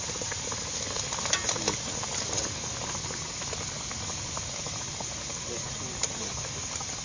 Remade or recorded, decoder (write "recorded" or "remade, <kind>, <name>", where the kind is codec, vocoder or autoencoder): recorded